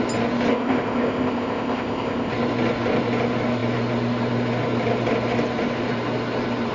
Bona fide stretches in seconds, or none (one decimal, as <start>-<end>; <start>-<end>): 0.0-0.5; 2.3-6.7

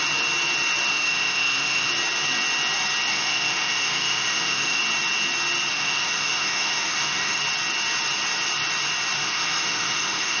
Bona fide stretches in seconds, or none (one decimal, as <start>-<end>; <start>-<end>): 0.0-0.9; 1.9-3.1; 4.8-5.7; 7.4-9.2

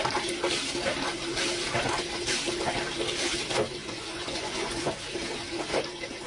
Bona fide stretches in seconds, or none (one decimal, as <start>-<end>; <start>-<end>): 0.0-3.8; 4.9-6.3

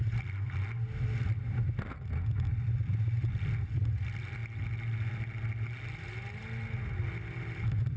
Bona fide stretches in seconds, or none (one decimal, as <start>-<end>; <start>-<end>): 0.0-8.0

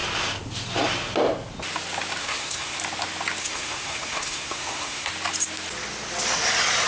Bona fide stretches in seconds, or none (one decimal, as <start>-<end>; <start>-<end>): 0.0-2.2; 2.8-3.4; 5.1-6.9

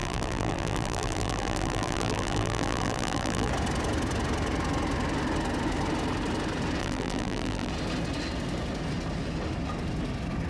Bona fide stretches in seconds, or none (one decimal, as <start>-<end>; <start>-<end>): 3.5-6.8; 7.7-10.5